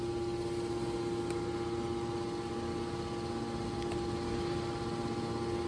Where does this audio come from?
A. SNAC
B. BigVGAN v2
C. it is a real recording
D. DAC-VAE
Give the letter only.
C